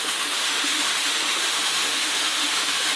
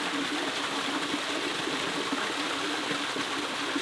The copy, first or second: first